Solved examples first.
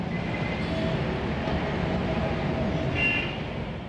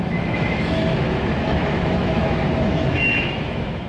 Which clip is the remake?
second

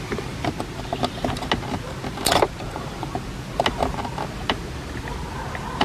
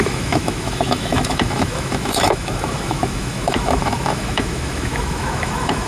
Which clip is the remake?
second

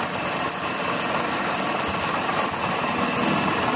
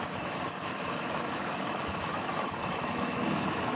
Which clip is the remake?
second